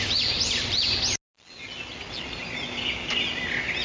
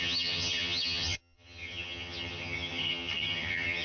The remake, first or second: second